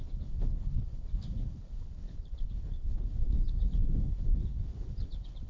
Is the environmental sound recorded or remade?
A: remade